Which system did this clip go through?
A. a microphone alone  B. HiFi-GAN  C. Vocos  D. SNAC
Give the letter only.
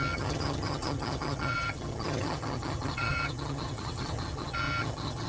B